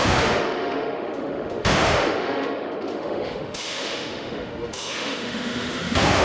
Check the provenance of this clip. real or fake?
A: fake